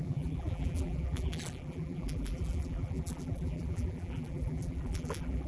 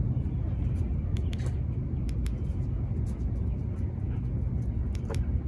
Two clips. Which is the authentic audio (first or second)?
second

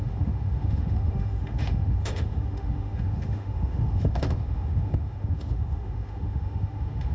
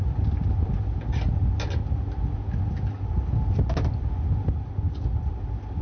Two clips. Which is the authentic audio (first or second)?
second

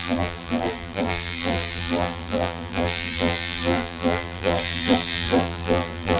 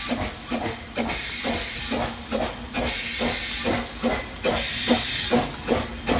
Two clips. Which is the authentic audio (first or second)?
second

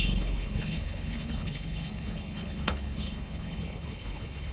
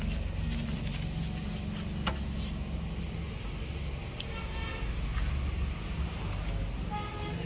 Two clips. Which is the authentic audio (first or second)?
second